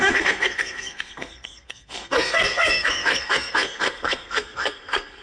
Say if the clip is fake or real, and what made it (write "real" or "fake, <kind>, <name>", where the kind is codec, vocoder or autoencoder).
fake, codec, SNAC